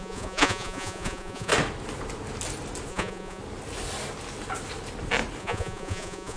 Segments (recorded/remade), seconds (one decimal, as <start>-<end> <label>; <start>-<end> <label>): 0.0-1.5 remade; 1.5-2.9 recorded; 2.9-3.4 remade; 3.4-5.4 recorded; 5.4-6.4 remade